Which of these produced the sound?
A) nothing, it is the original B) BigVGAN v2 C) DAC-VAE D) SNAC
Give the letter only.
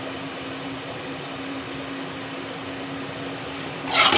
B